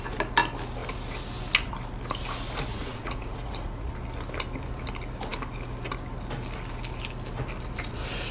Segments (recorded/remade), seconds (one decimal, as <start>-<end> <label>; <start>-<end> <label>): 0.0-2.7 recorded; 2.7-3.9 remade; 3.9-8.3 recorded